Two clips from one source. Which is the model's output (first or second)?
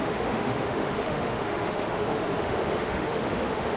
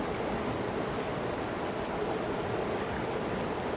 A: first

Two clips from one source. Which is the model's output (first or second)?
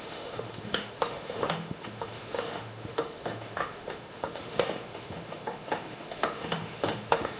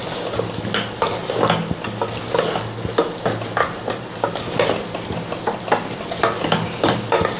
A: first